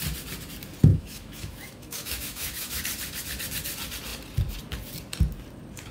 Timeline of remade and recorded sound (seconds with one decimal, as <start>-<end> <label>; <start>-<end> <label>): 0.0-0.9 recorded; 0.9-2.8 remade; 2.8-5.9 recorded